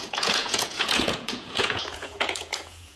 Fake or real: fake